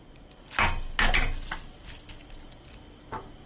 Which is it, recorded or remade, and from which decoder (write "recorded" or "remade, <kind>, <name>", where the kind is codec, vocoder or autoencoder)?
recorded